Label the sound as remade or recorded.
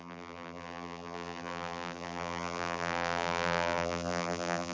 remade